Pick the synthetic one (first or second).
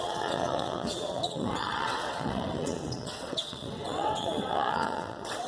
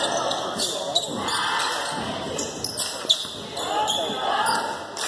first